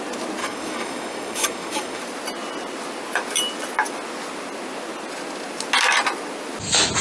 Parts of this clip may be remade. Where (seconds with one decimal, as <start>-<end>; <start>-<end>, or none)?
0.4-2.0